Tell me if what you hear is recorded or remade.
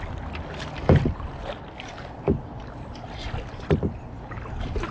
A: recorded